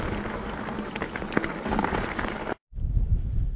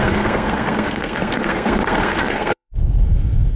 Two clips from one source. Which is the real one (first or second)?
first